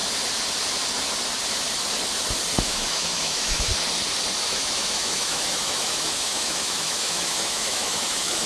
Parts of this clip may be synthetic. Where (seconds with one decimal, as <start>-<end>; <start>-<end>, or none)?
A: 2.6-3.7; 4.4-8.5